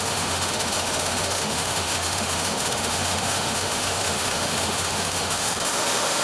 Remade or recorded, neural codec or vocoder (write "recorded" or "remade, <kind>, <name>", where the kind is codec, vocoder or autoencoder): remade, autoencoder, DAC-VAE